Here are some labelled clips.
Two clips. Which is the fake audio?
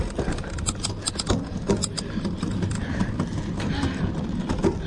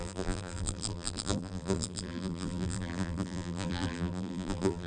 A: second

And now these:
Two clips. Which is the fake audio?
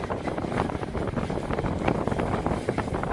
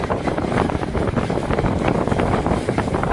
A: second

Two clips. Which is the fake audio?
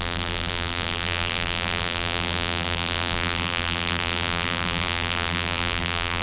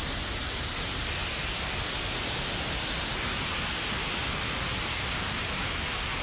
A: first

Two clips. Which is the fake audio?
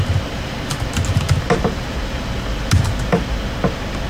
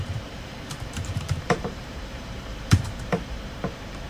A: second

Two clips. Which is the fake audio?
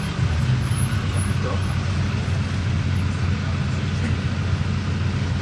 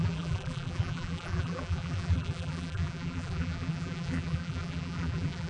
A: second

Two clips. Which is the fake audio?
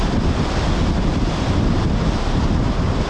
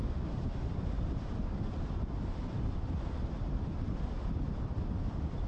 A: second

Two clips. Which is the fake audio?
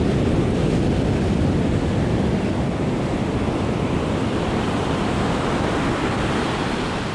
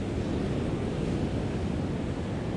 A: first